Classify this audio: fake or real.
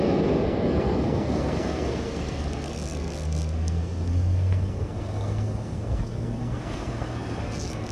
fake